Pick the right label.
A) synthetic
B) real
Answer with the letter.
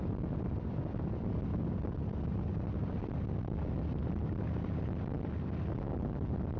B